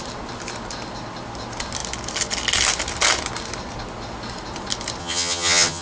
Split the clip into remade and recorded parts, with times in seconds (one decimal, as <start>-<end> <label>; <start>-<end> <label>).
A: 0.0-5.0 recorded; 5.0-5.8 remade

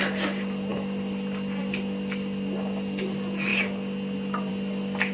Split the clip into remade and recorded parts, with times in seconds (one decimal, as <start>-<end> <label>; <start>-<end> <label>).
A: 0.0-5.1 recorded

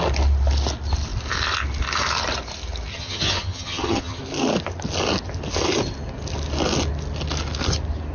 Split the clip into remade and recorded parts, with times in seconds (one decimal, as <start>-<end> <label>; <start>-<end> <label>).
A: 0.0-2.9 recorded; 2.9-4.2 remade; 4.2-8.1 recorded

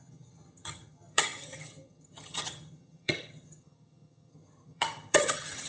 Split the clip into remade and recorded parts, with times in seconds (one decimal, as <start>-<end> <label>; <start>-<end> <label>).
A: 0.0-5.7 remade

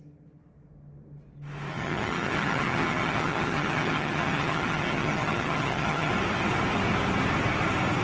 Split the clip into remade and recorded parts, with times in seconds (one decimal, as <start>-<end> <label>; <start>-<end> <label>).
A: 0.0-1.7 recorded; 1.7-6.1 remade; 6.1-8.0 recorded